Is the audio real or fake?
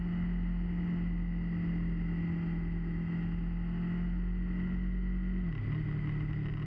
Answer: real